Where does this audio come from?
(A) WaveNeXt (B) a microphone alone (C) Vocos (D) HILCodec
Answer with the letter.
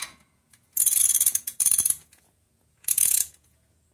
C